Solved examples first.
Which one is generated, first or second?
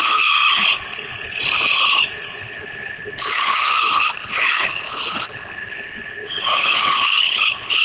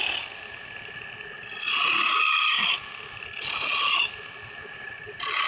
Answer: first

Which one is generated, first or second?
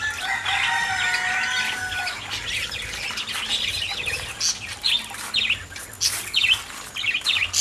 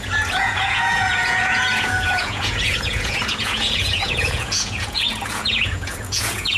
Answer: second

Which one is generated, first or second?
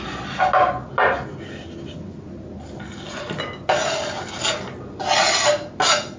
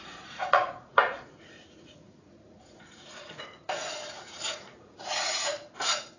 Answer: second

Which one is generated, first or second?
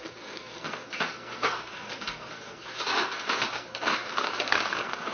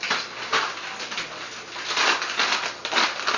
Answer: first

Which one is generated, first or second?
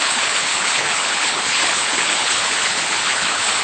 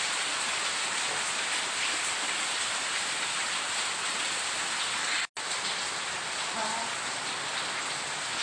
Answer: first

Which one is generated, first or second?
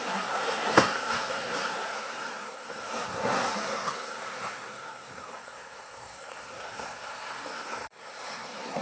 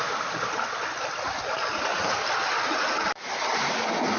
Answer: first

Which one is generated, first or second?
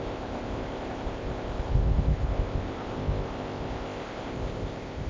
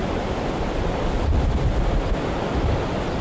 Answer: first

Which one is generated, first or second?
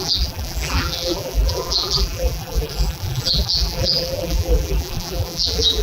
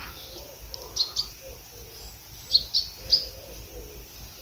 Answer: first